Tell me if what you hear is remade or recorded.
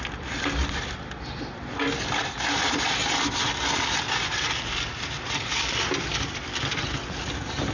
recorded